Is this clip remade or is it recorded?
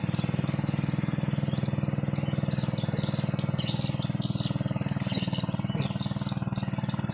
recorded